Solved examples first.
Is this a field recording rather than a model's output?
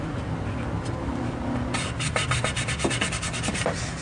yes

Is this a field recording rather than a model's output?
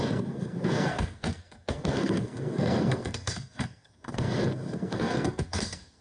no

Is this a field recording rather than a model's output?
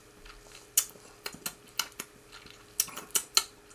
yes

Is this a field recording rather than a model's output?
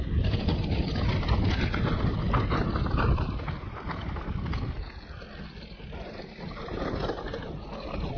yes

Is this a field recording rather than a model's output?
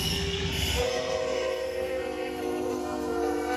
no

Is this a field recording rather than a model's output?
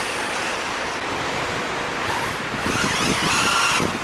yes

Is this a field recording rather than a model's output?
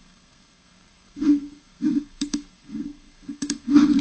no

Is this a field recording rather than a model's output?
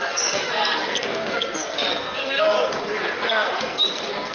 no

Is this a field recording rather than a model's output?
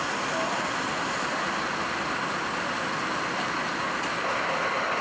yes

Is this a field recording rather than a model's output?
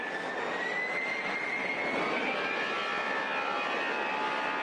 yes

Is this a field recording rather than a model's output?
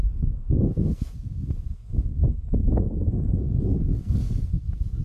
no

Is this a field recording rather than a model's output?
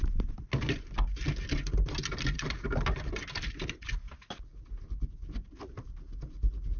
yes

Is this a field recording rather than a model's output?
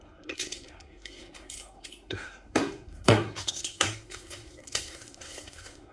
no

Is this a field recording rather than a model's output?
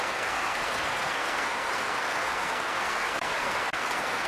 no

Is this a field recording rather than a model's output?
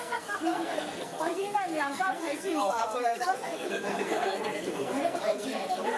no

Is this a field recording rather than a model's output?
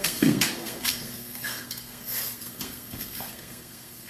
no